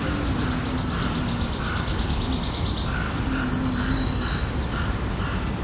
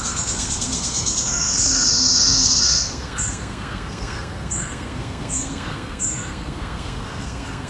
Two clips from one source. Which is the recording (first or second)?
first